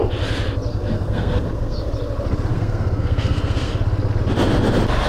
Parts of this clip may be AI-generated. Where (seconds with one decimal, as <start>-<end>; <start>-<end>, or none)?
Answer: 0.7-1.9; 2.5-3.7